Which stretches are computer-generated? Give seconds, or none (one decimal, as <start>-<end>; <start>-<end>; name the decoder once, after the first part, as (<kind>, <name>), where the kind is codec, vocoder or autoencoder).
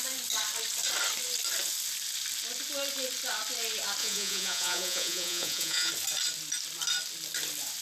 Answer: 4.0-5.9 (vocoder, Vocos)